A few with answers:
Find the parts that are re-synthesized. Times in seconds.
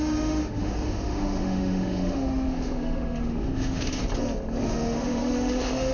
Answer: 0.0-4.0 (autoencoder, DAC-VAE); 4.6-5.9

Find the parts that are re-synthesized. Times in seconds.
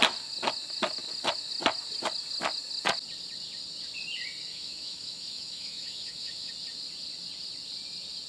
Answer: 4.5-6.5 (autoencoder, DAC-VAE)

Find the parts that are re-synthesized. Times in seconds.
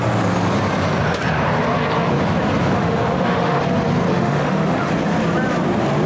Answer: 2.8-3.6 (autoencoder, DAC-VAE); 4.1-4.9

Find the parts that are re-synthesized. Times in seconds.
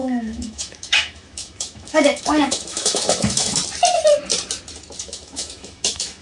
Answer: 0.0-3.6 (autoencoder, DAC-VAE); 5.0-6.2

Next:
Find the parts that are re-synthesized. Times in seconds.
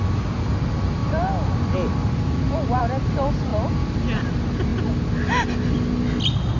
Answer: none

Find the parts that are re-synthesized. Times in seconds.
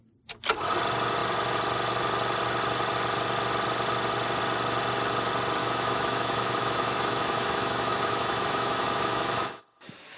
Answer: 5.6-9.6 (autoencoder, DAC-VAE)